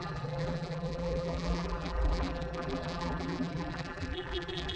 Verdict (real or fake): fake